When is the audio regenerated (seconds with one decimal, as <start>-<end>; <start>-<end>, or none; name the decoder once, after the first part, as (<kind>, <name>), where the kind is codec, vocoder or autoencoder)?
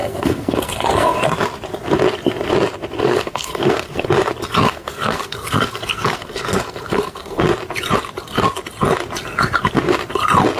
0.0-1.3 (codec, SNAC); 3.0-4.1; 4.7-7.4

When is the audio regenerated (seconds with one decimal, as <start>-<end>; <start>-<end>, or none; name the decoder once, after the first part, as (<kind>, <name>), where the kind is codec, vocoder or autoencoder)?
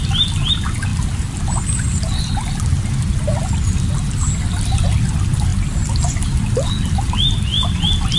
none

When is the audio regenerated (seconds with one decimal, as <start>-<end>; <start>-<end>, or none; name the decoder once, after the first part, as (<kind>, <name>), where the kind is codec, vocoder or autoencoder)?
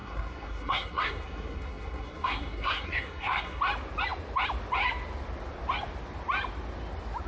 0.0-3.6 (codec, SNAC)